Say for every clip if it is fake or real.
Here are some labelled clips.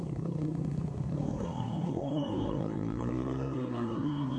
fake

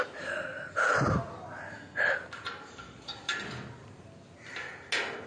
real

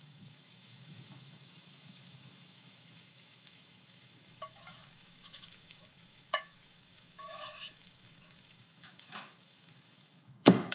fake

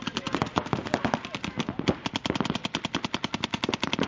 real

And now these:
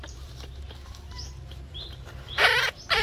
fake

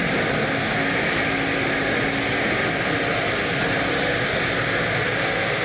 real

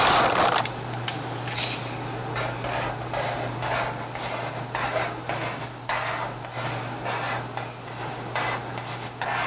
real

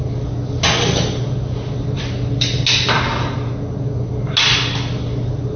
real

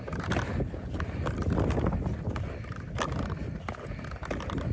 real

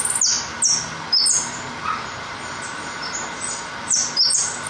real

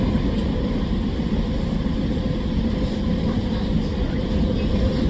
real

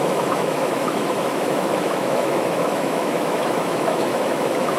fake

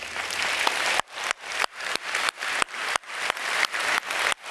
real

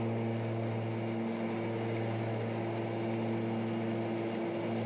real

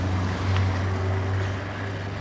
real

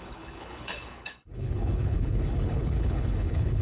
fake